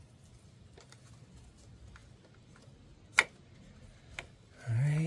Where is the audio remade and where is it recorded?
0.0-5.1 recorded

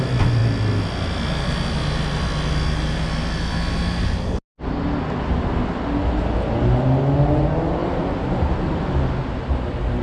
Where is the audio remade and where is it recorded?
0.0-7.8 recorded; 7.8-8.9 remade; 8.9-10.0 recorded